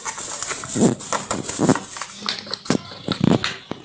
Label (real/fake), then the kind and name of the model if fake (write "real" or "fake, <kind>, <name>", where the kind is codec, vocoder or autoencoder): real